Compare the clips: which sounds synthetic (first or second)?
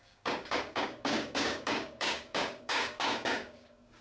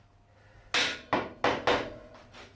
first